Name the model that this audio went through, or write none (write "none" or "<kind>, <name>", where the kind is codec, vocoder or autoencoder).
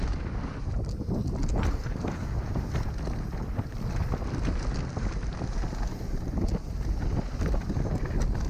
none